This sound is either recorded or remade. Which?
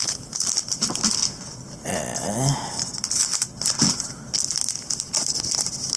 recorded